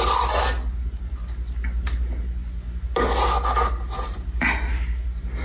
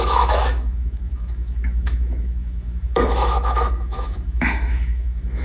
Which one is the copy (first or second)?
second